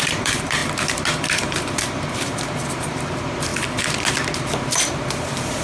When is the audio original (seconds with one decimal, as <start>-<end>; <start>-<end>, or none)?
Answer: 0.6-1.6; 3.5-4.9